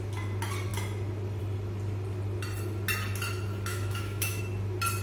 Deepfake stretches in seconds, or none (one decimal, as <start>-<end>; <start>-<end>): 3.7-4.4